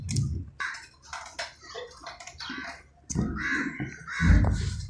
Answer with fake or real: real